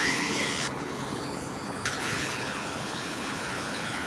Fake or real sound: fake